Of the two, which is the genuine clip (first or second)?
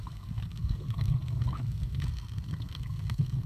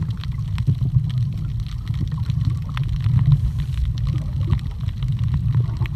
second